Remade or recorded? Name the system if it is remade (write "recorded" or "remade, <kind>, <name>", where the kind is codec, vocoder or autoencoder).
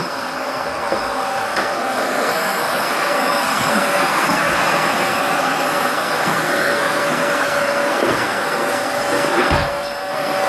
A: remade, codec, SNAC